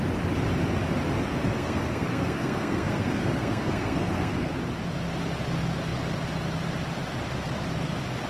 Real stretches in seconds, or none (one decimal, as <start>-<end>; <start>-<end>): 0.0-1.4; 4.6-8.3